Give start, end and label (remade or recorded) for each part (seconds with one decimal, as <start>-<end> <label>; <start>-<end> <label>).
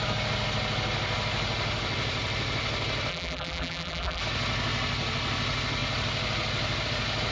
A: 0.0-3.1 recorded; 3.1-4.2 remade; 4.2-7.3 recorded